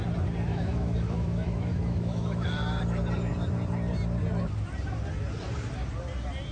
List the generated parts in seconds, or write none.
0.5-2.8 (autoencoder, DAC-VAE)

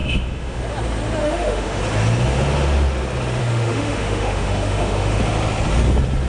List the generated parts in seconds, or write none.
0.0-0.6 (autoencoder, DAC-VAE); 1.2-1.8; 3.4-5.2

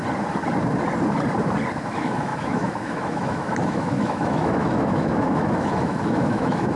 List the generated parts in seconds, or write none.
1.8-6.8 (autoencoder, DAC-VAE)

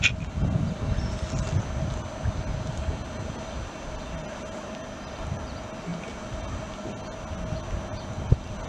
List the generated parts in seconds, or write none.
none